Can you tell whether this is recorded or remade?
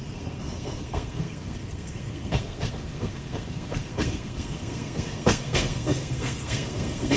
remade